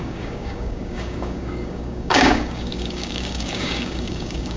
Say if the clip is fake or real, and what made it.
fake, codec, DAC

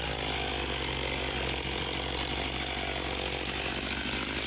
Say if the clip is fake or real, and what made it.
real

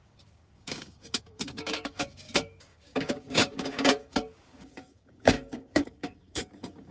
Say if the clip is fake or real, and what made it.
fake, codec, DAC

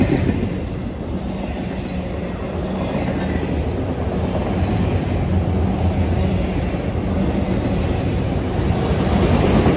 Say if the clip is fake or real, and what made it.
real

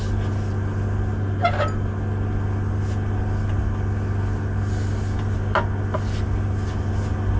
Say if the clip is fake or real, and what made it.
real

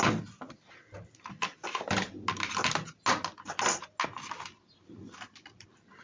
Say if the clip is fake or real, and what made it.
real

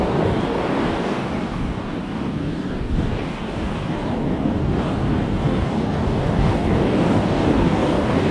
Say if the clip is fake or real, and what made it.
fake, codec, DAC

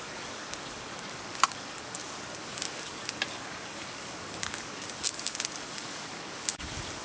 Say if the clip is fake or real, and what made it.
fake, codec, DAC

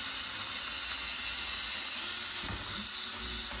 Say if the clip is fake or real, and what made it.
real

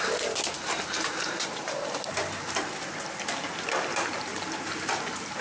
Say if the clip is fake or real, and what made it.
real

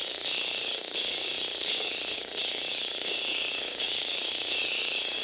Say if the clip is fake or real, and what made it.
fake, codec, DAC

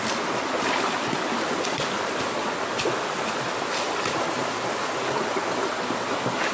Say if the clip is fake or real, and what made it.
real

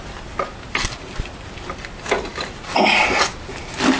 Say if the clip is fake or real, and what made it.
real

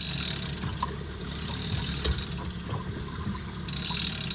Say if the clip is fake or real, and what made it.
real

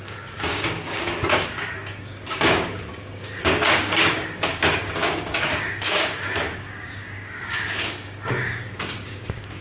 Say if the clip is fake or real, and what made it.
fake, codec, DAC